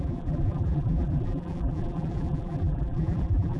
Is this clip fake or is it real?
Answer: fake